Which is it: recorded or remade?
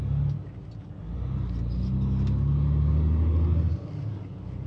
recorded